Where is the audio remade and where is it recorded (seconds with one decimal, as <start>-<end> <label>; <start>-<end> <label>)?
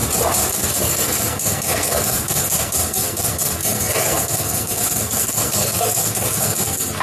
0.0-0.5 recorded; 0.5-7.0 remade